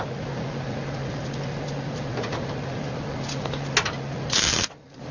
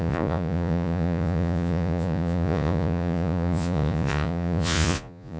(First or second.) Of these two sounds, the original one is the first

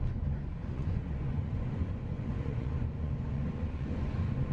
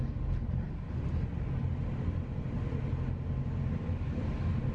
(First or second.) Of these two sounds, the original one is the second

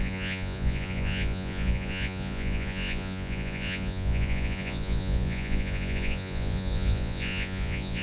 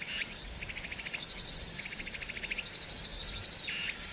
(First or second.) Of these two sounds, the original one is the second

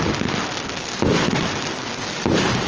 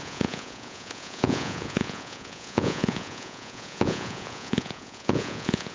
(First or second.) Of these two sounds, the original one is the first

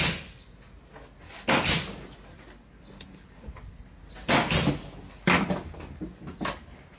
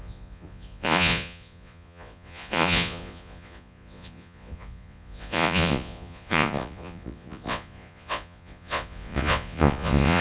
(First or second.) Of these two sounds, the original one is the first